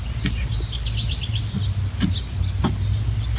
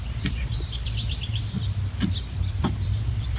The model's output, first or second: second